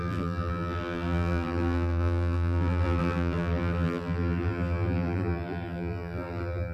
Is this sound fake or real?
fake